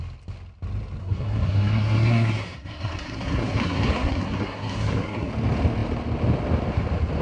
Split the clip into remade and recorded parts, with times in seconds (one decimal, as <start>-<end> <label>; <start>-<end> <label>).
0.0-1.0 recorded; 1.0-5.3 remade; 5.3-7.2 recorded